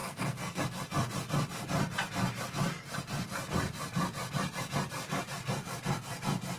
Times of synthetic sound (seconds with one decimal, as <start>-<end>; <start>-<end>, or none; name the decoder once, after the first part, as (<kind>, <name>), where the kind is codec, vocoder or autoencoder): 0.0-0.6 (codec, SNAC)

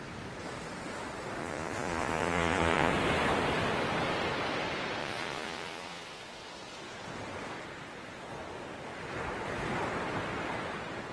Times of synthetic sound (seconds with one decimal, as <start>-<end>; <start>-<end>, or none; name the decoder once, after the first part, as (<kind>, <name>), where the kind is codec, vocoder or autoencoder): 1.4-2.9 (vocoder, Vocos); 5.0-6.4

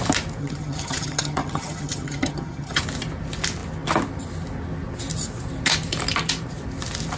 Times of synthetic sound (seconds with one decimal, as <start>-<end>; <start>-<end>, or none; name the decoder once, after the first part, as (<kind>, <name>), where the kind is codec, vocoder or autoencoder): 0.4-2.8 (vocoder, HiFi-GAN)